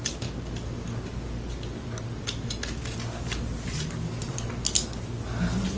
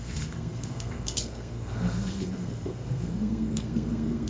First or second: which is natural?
first